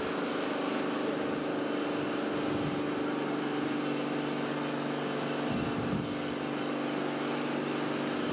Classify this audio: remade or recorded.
recorded